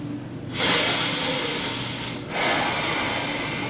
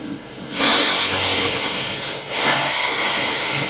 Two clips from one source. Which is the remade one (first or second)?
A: second